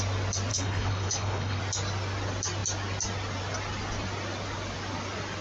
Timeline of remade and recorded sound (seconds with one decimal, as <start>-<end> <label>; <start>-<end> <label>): 0.0-0.5 recorded; 0.5-1.6 remade; 1.6-5.4 recorded